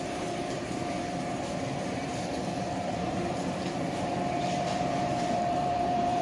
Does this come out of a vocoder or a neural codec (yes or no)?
yes